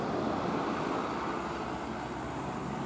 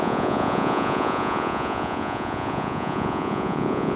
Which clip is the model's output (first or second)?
second